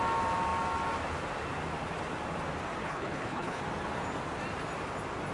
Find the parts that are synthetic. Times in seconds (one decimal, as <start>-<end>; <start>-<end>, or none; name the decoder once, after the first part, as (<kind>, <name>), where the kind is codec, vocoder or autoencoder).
2.8-3.6 (codec, HILCodec)